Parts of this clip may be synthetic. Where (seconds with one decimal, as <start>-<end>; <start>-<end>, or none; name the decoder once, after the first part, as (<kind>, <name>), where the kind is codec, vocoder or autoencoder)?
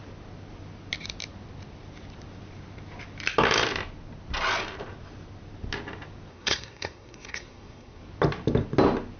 6.3-8.0 (codec, SNAC)